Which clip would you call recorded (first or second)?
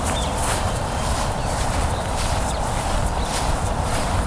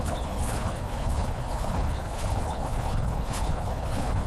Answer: first